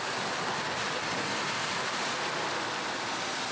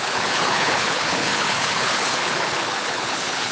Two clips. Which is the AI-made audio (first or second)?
second